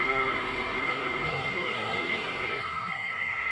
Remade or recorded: remade